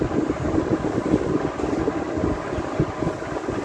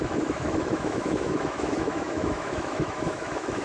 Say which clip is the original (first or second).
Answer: first